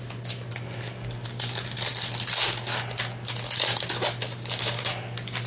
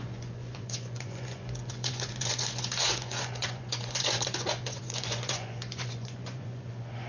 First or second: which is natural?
first